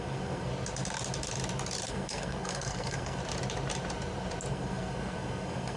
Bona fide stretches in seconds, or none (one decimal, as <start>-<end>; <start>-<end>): 0.5-1.9; 3.2-4.5